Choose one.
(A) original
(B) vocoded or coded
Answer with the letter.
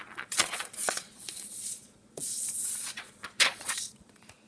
B